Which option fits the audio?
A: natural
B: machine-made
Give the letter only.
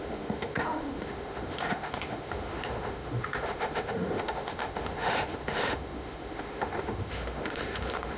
B